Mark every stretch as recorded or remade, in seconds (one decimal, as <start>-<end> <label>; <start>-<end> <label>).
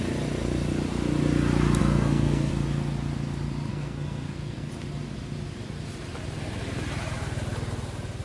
0.0-1.8 recorded; 1.8-2.5 remade; 2.5-3.7 recorded; 3.7-4.7 remade; 4.7-8.2 recorded